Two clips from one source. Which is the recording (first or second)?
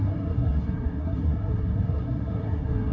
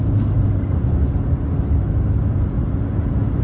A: second